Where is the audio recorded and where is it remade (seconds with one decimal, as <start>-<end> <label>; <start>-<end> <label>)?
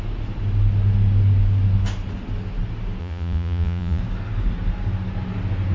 0.0-3.0 recorded; 3.0-4.0 remade; 4.0-5.7 recorded